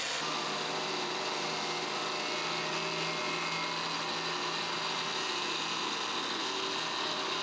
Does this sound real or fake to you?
real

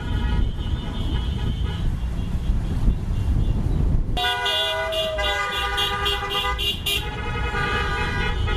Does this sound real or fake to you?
real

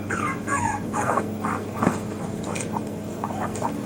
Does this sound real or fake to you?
fake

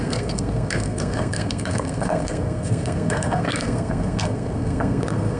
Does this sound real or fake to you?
fake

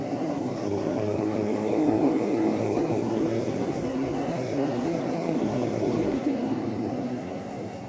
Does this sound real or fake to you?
fake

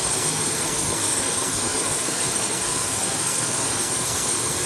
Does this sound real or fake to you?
fake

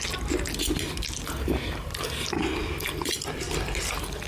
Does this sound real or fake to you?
real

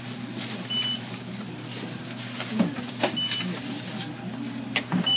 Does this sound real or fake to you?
real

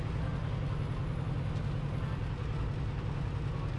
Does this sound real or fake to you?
real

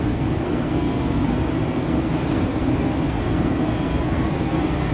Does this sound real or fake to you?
fake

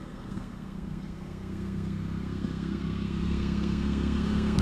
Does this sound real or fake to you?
fake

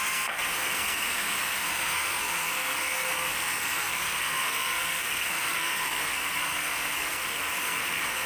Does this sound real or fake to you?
fake